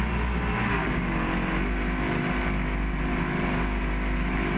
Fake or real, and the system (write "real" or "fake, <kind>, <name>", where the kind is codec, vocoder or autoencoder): real